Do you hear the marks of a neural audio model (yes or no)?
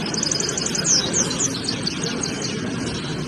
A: no